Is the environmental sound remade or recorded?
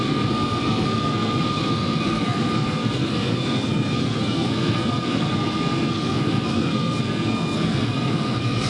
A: remade